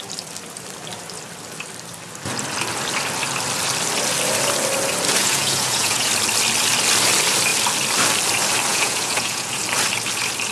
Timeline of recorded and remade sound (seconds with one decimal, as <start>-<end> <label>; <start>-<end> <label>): 0.0-5.2 recorded; 5.2-6.1 remade; 6.1-8.7 recorded; 8.7-9.6 remade; 9.6-10.5 recorded